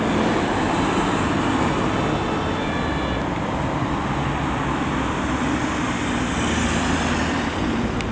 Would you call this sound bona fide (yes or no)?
yes